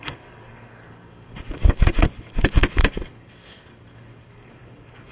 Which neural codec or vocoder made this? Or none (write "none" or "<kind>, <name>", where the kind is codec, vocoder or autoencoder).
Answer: codec, DAC